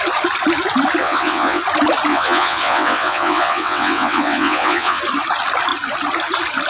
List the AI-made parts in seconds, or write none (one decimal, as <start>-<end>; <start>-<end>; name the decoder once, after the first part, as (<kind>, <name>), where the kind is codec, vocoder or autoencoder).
1.0-1.6 (vocoder, WaveNeXt); 2.1-5.0